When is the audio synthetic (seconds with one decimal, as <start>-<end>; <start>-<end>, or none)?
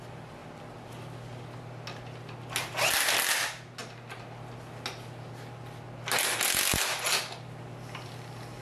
0.0-0.4; 2.6-3.8; 7.2-8.6